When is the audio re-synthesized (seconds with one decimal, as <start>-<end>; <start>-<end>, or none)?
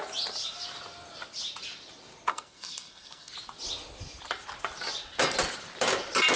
2.3-3.3